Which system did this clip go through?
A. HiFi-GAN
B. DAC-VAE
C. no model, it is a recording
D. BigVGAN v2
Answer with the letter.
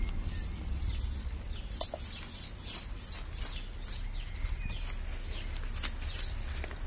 C